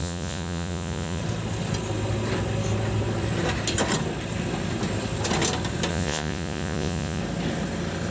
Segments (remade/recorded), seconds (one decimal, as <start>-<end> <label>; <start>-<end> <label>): 0.0-1.2 remade; 1.2-5.9 recorded; 5.9-7.2 remade; 7.2-8.1 recorded

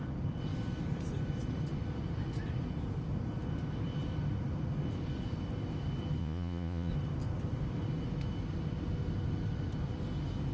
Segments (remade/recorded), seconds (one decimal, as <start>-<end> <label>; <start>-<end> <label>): 0.0-6.2 recorded; 6.2-6.9 remade; 6.9-10.5 recorded

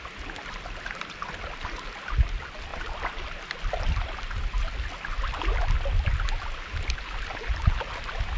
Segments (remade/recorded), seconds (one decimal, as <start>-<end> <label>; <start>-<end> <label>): 0.0-8.4 recorded

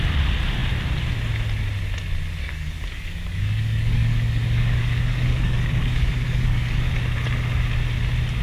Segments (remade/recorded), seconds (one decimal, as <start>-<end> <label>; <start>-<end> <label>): 0.0-2.4 recorded; 2.4-6.9 remade; 6.9-8.4 recorded